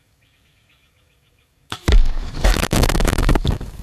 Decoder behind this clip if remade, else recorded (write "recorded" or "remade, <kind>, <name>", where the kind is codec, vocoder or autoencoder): remade, codec, DAC